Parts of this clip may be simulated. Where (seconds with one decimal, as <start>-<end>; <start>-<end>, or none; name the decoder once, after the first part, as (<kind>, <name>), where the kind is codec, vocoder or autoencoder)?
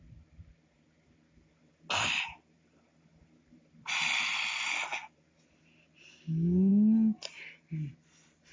none